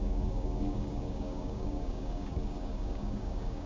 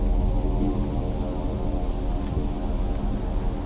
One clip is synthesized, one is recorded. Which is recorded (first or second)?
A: second